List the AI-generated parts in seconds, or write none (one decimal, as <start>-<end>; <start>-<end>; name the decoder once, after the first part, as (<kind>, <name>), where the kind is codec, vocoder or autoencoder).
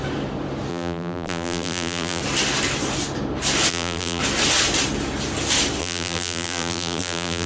0.7-2.2 (vocoder, BigVGAN v2); 3.7-4.2; 5.8-7.5